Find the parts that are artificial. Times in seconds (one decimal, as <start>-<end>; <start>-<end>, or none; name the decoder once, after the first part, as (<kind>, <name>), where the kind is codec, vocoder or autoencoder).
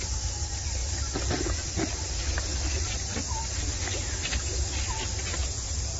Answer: none